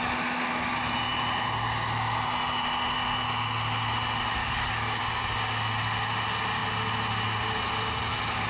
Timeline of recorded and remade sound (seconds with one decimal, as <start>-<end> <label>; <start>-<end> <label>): 0.0-4.4 recorded; 4.4-5.0 remade; 5.0-8.5 recorded